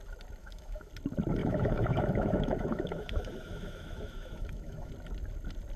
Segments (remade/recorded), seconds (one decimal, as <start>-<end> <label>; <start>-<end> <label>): 0.0-0.4 recorded; 0.4-0.9 remade; 0.9-1.4 recorded; 1.4-4.9 remade; 4.9-5.8 recorded